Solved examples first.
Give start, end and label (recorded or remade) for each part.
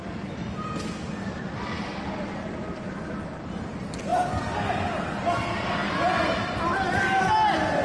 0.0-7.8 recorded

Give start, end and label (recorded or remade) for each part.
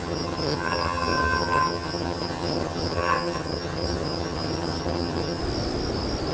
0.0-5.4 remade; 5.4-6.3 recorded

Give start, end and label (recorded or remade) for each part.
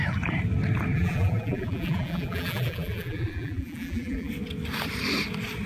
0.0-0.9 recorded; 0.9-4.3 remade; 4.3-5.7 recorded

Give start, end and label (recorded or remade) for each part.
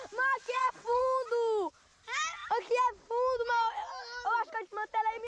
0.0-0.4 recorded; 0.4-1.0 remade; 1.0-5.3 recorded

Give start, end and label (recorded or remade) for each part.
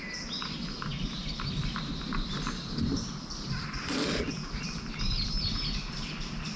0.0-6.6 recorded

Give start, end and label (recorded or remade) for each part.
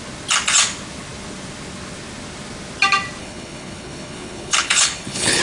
0.0-3.2 recorded; 3.2-5.4 remade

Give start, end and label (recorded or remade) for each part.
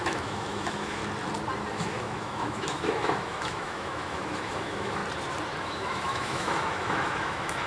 0.0-1.0 remade; 1.0-1.7 recorded; 1.7-5.0 remade; 5.0-5.6 recorded; 5.6-7.7 remade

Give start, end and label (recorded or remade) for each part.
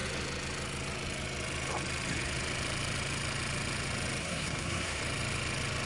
0.0-4.2 recorded; 4.2-5.0 remade; 5.0-5.9 recorded